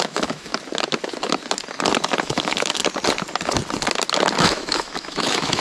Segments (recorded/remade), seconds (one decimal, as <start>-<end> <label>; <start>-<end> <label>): 0.0-0.5 remade; 0.5-2.2 recorded; 2.2-2.8 remade; 2.8-4.4 recorded; 4.4-5.6 remade